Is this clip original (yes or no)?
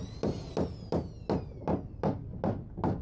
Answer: yes